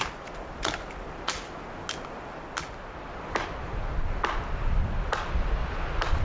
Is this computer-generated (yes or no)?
no